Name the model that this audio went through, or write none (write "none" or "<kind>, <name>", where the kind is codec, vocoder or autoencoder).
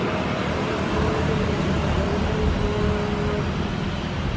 none